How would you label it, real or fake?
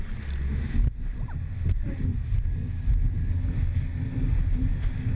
real